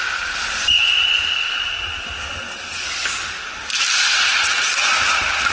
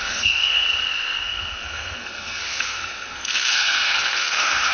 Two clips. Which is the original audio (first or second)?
first